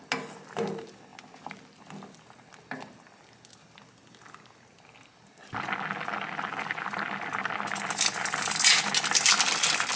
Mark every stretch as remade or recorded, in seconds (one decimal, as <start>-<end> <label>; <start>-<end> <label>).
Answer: 0.0-10.0 recorded